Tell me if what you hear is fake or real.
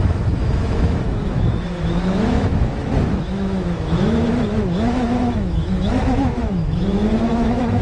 fake